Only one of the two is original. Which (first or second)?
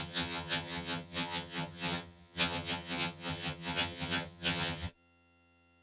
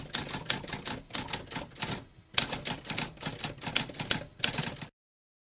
second